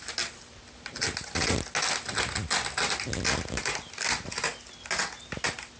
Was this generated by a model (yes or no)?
no